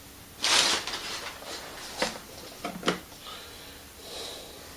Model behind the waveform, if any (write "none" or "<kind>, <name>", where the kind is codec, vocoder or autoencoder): none